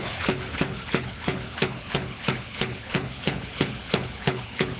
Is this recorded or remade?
remade